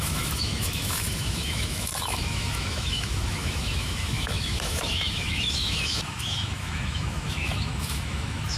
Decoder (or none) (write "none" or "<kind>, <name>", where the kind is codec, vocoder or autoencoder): autoencoder, DAC-VAE